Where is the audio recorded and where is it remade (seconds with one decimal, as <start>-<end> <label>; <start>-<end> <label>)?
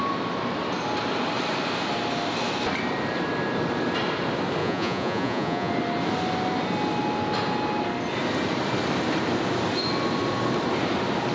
0.0-4.6 recorded; 4.6-5.7 remade; 5.7-11.3 recorded